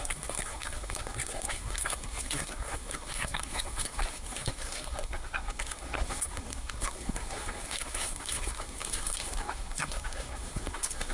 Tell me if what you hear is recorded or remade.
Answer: remade